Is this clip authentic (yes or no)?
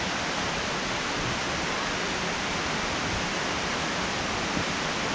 yes